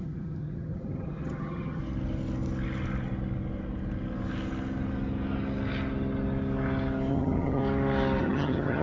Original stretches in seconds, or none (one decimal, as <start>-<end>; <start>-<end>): 1.8-7.1; 7.6-8.2